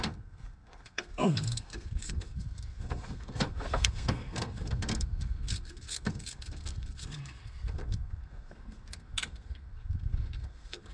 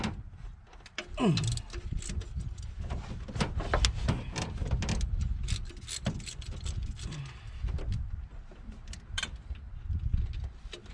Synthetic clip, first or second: first